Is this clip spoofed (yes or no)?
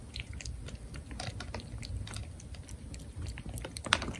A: no